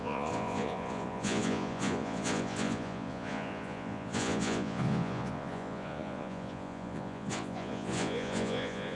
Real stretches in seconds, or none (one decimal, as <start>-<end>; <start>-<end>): none